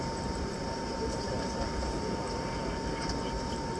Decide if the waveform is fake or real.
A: fake